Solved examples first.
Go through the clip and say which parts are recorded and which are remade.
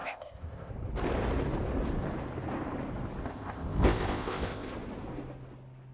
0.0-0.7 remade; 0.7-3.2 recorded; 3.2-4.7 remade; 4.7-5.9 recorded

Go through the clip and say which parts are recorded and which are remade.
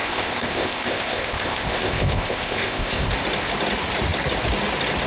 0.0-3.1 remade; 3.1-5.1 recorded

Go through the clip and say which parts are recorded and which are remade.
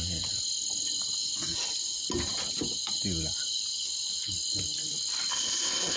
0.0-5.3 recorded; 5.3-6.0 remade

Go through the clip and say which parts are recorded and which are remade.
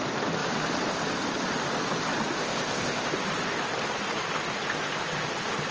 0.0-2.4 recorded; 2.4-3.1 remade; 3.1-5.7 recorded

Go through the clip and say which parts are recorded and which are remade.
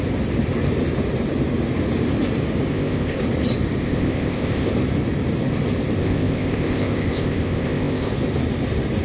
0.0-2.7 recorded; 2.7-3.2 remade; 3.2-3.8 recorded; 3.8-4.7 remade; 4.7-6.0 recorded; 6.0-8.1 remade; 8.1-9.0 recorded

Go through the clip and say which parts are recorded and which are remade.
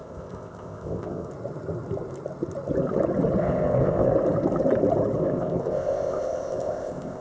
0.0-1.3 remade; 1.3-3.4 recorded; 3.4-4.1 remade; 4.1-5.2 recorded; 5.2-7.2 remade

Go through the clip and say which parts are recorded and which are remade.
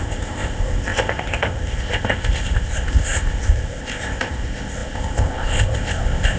0.0-6.4 remade